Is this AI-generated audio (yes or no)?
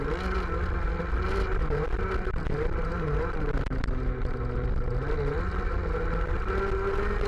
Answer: no